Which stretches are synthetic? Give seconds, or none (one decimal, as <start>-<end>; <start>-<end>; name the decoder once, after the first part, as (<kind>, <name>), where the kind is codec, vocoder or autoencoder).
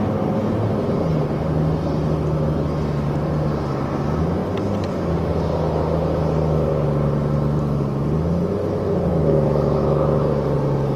9.1-10.3 (autoencoder, DAC-VAE)